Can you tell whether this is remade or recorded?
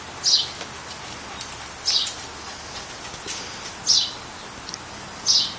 recorded